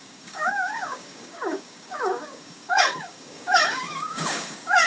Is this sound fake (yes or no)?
yes